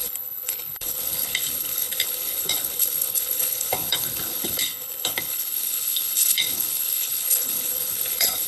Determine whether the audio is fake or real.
fake